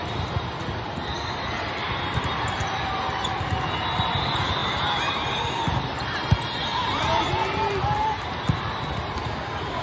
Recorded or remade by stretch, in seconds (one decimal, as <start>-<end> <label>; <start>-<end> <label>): 0.0-9.8 recorded